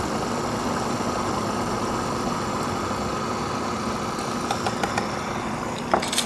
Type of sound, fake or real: real